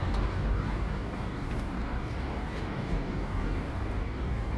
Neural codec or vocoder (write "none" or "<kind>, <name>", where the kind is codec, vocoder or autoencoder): codec, DAC